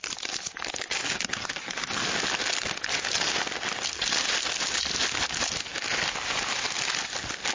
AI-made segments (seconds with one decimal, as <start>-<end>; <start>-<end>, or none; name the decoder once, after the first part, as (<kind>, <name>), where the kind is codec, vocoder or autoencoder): none